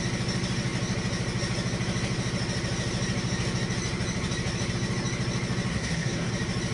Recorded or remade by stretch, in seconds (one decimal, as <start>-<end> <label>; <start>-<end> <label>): 0.0-5.7 recorded; 5.7-6.3 remade; 6.3-6.7 recorded